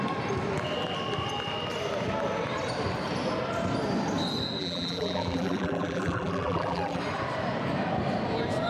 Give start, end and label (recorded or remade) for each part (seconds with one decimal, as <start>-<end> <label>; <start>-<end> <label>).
0.0-4.6 recorded; 4.6-7.0 remade; 7.0-8.7 recorded